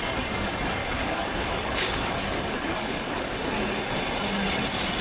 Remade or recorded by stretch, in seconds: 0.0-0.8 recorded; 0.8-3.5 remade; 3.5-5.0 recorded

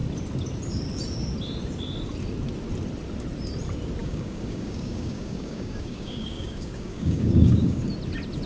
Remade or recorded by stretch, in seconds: 0.0-4.0 recorded; 4.0-7.9 remade; 7.9-8.5 recorded

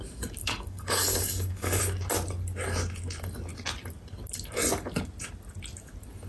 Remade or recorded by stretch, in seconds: 0.0-0.4 recorded; 0.4-1.8 remade; 1.8-6.3 recorded

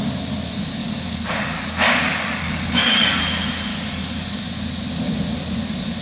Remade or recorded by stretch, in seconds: 0.0-0.8 recorded; 0.8-3.2 remade; 3.2-3.7 recorded; 3.7-4.4 remade; 4.4-6.0 recorded

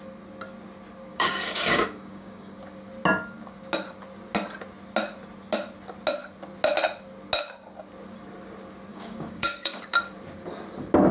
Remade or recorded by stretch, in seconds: 0.0-1.1 recorded; 1.1-2.6 remade; 2.6-8.9 recorded; 8.9-9.8 remade; 9.8-11.1 recorded

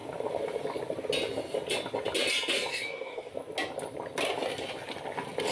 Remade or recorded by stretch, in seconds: 0.0-2.7 recorded; 2.7-3.3 remade; 3.3-5.5 recorded

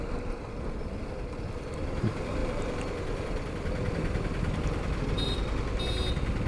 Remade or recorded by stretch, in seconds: 0.0-6.5 recorded

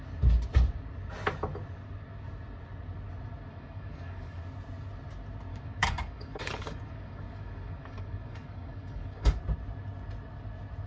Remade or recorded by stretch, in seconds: 0.0-3.5 recorded; 3.5-4.4 remade; 4.4-5.5 recorded; 5.5-9.4 remade; 9.4-10.9 recorded